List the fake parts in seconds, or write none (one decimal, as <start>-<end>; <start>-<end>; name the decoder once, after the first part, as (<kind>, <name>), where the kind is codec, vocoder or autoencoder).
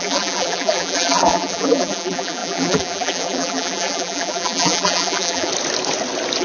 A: 0.0-5.5 (vocoder, BigVGAN v2)